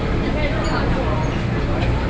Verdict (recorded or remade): recorded